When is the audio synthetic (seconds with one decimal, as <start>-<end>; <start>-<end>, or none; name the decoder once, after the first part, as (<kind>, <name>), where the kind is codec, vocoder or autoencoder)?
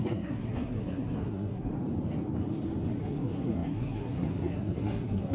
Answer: 0.0-1.7 (codec, SNAC); 3.0-5.3